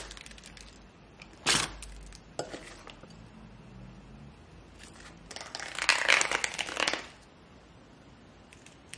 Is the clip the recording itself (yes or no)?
yes